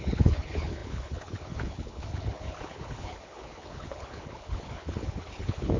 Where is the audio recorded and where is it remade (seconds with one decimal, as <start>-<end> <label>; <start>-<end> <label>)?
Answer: 0.0-5.8 remade